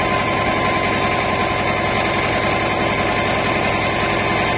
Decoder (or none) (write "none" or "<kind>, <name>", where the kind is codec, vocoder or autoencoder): none